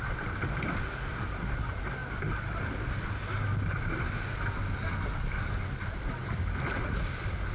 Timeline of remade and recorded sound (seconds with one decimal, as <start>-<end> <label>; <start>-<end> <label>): 0.0-7.5 recorded